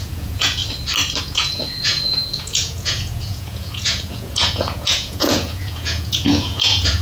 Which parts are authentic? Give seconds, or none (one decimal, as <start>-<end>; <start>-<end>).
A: 0.6-1.2